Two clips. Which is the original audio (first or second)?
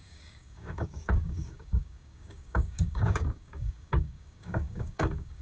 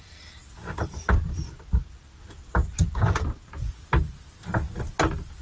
second